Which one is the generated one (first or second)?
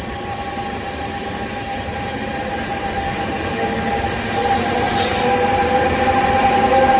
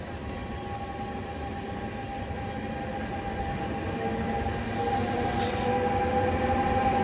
first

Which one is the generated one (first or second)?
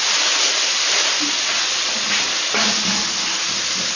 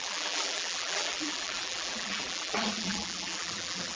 second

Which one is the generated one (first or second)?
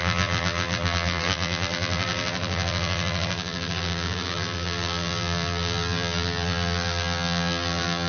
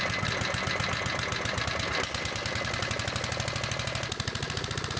first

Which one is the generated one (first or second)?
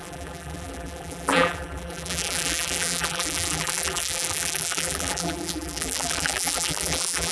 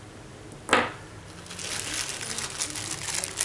first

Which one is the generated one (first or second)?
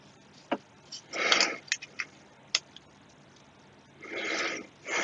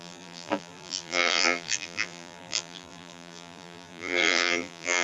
second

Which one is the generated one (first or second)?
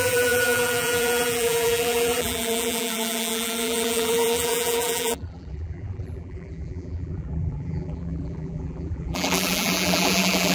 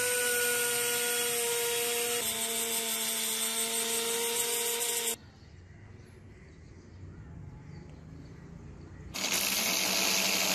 first